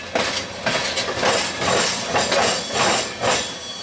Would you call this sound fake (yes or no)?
no